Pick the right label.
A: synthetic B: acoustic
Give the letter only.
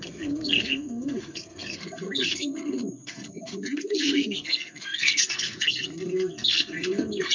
A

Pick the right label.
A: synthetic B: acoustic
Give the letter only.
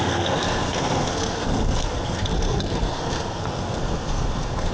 A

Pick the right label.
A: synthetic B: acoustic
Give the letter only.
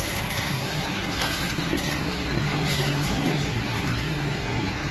A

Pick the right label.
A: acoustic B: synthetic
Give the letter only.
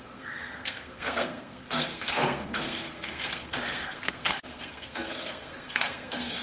B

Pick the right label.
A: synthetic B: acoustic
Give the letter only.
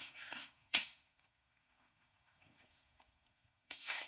A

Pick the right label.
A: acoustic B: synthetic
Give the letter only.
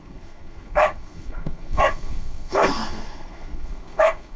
B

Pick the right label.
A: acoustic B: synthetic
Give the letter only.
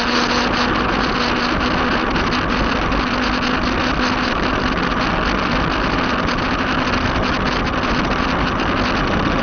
A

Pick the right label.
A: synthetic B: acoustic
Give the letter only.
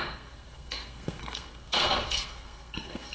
A